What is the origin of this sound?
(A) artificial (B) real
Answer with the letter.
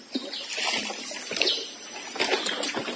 B